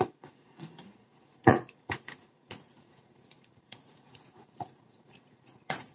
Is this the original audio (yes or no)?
no